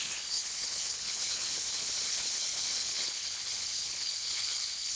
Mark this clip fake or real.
fake